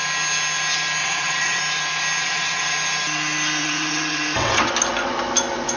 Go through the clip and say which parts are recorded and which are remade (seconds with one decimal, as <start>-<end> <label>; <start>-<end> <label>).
0.0-1.0 recorded; 1.0-1.6 remade; 1.6-2.2 recorded; 2.2-2.7 remade; 2.7-3.6 recorded; 3.6-4.7 remade; 4.7-5.8 recorded